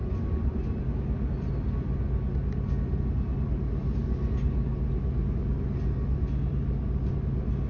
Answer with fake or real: real